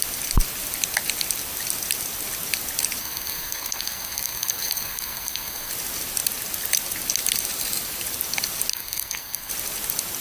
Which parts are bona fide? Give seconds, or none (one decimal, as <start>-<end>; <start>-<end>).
0.0-3.0; 5.7-8.7; 9.5-10.2